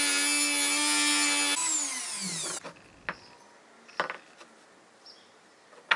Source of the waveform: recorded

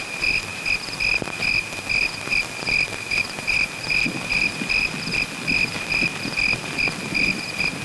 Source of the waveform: recorded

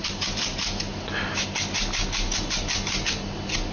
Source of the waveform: recorded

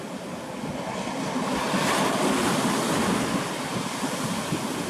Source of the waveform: recorded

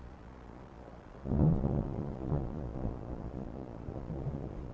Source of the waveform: remade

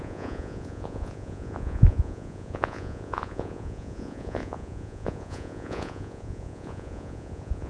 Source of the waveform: remade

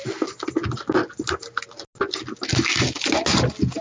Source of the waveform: recorded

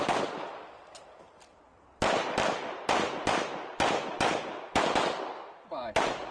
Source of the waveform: recorded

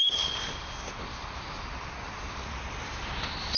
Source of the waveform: recorded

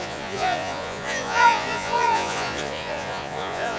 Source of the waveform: remade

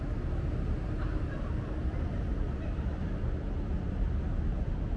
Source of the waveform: recorded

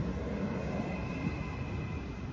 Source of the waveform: recorded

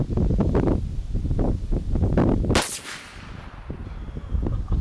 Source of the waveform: recorded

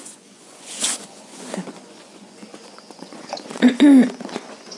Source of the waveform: remade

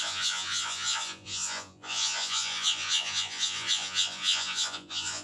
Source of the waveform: remade